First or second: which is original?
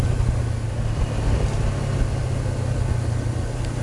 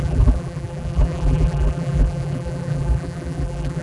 first